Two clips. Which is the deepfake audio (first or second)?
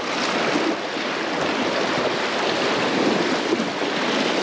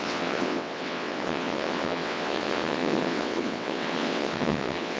second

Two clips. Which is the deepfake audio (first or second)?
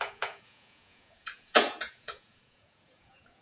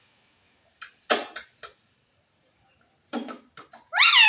first